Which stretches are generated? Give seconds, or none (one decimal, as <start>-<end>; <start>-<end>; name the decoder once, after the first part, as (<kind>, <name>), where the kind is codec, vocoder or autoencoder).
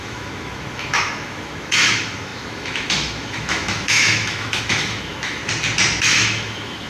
0.0-5.4 (autoencoder, DAC-VAE); 6.0-6.9